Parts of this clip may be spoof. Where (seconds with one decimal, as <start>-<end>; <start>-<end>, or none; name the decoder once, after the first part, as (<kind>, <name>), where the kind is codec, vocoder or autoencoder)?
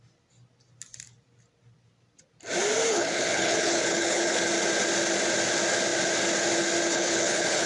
2.9-4.4 (codec, HILCodec); 6.9-7.7